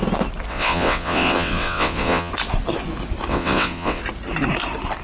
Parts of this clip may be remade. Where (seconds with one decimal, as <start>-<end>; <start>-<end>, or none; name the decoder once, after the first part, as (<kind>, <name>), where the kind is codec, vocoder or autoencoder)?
0.5-2.3 (vocoder, WaveNeXt); 3.3-4.0